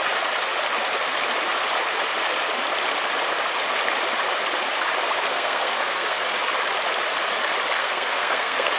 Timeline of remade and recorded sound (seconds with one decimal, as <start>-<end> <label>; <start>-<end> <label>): 0.0-5.3 recorded; 5.3-6.2 remade; 6.2-7.8 recorded; 7.8-8.8 remade